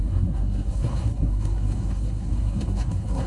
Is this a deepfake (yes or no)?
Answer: yes